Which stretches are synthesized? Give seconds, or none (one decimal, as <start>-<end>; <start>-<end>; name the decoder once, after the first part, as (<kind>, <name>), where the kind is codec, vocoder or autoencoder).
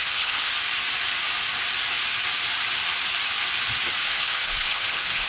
0.0-0.5 (codec, HILCodec); 4.0-5.3